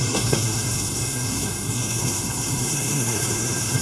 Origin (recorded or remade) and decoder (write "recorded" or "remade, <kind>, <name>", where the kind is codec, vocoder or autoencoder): remade, codec, SNAC